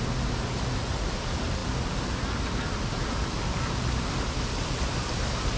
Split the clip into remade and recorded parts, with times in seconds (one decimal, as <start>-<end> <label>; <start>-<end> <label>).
0.0-5.6 recorded